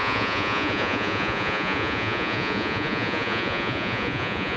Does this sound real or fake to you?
fake